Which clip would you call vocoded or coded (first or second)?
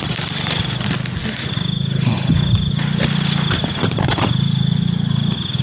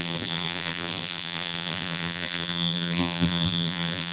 second